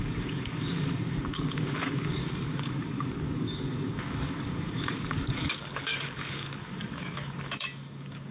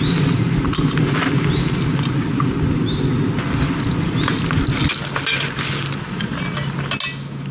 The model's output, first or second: first